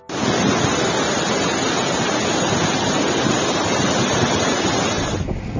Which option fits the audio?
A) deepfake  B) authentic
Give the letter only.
B